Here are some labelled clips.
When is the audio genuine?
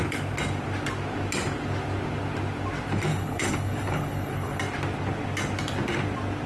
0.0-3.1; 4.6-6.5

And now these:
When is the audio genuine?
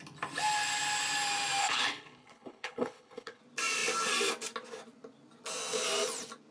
0.0-1.6; 3.4-6.5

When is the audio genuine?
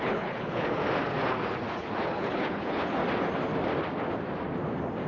0.8-1.8; 3.0-5.1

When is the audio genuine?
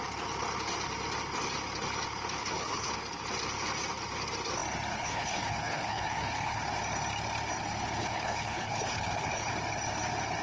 0.0-2.4; 2.9-4.9; 6.6-8.0; 9.5-10.4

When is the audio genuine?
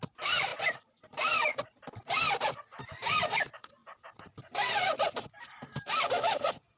0.0-6.8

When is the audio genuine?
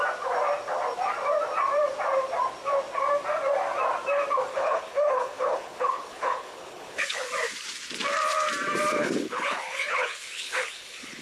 0.0-4.5; 7.3-9.0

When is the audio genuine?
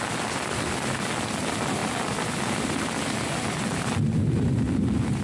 0.0-5.2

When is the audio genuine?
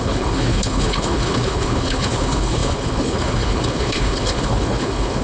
none